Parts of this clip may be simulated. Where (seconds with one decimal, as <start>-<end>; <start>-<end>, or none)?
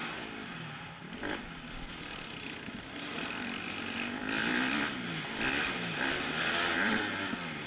none